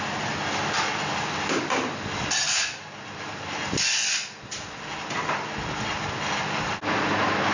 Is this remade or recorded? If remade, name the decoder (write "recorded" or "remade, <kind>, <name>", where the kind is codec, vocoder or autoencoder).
recorded